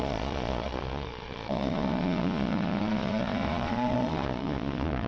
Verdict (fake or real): fake